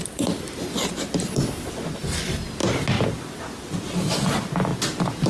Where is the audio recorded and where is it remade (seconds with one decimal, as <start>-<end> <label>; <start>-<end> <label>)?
0.0-5.3 recorded